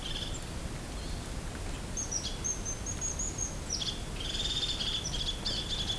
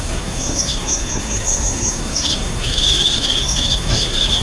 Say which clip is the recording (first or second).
first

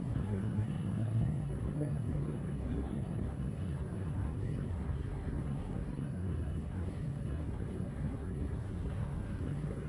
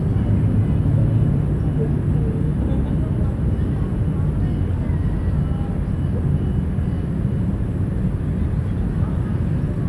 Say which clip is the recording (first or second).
second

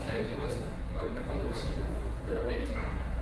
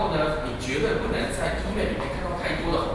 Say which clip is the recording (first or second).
second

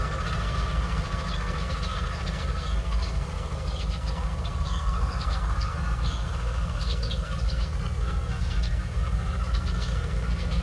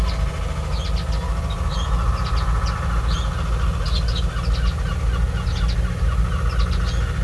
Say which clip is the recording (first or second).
second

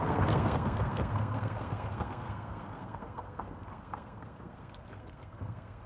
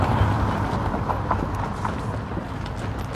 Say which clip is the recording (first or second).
second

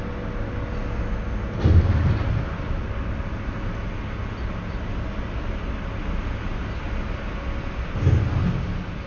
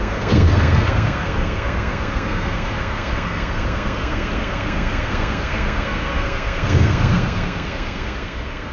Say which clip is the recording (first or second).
first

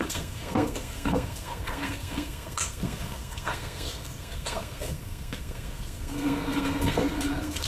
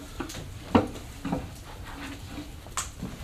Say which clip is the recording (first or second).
second